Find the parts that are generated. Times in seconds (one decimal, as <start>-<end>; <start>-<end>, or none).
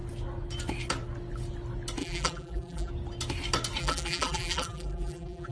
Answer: 2.0-2.9; 3.8-5.5